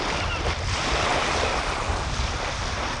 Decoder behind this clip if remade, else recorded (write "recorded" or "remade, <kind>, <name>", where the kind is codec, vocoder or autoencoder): recorded